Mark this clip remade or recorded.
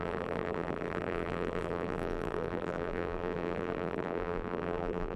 remade